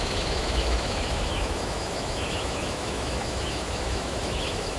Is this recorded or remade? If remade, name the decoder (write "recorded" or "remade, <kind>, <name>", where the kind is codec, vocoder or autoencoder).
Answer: remade, autoencoder, DAC-VAE